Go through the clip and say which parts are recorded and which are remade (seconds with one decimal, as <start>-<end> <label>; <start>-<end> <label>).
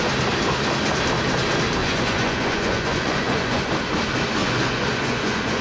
0.0-1.8 recorded; 1.8-3.7 remade; 3.7-4.4 recorded; 4.4-5.6 remade